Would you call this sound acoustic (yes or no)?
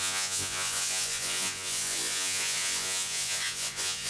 no